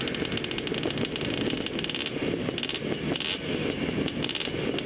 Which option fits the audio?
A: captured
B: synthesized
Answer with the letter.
A